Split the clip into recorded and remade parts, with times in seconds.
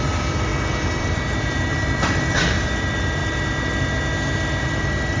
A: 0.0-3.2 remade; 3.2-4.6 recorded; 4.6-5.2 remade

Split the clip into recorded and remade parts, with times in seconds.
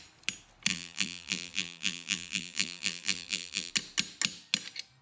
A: 0.0-0.7 recorded; 0.7-3.7 remade; 3.7-5.0 recorded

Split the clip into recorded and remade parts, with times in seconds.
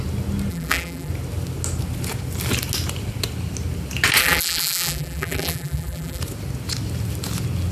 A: 0.0-0.5 recorded; 0.5-1.1 remade; 1.1-4.2 recorded; 4.2-6.2 remade; 6.2-7.7 recorded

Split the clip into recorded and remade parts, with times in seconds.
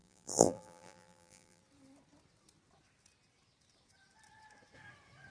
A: 0.0-1.6 remade; 1.6-5.3 recorded